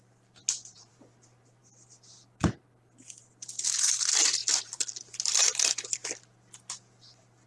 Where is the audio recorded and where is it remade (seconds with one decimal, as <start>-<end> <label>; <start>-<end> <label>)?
0.0-0.4 recorded; 0.4-0.9 remade; 0.9-4.4 recorded; 4.4-5.0 remade; 5.0-7.5 recorded